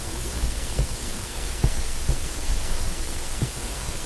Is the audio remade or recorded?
remade